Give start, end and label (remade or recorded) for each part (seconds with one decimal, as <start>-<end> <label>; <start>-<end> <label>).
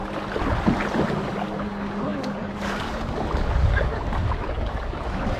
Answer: 0.0-1.1 recorded; 1.1-5.4 remade